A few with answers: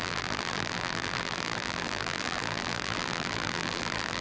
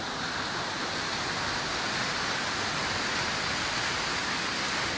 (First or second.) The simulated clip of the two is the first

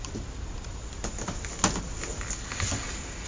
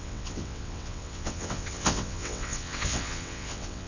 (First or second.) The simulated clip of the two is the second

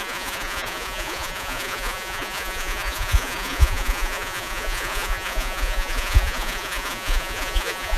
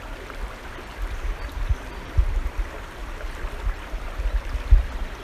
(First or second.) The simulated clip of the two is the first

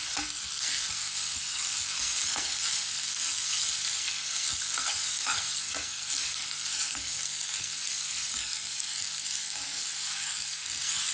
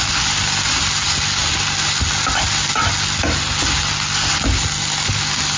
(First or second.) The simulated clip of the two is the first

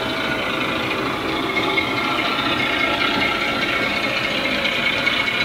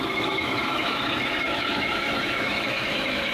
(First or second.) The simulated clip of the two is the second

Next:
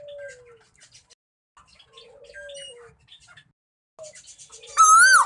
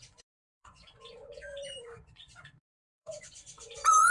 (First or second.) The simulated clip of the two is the second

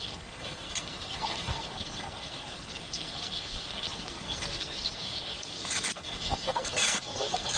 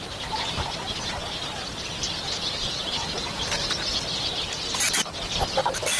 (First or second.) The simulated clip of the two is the first